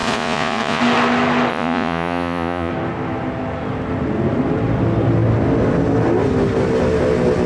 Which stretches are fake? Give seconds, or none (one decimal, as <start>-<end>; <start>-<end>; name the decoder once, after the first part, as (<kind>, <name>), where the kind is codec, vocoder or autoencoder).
0.0-0.8 (vocoder, Vocos); 1.5-2.7